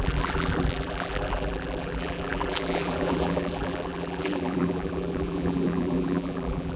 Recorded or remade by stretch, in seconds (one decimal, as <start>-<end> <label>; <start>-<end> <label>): 0.0-6.8 remade